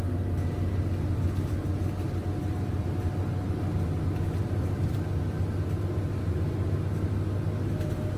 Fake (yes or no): no